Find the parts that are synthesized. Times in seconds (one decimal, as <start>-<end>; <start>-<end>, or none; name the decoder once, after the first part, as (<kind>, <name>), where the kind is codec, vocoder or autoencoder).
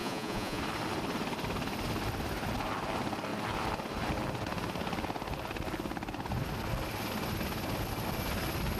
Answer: 0.0-0.6 (vocoder, Vocos)